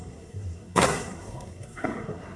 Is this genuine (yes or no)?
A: no